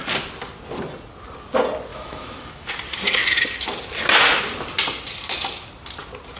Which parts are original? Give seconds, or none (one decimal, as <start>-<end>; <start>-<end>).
0.0-1.9; 2.7-6.4